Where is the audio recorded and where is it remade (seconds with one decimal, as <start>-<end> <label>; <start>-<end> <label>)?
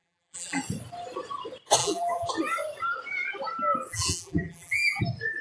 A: 0.0-0.6 remade; 0.6-1.8 recorded; 1.8-2.3 remade; 2.3-3.9 recorded; 3.9-5.0 remade; 5.0-5.4 recorded